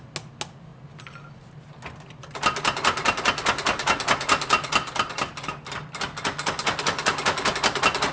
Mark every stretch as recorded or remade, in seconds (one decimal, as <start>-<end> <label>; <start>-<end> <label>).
0.0-8.1 recorded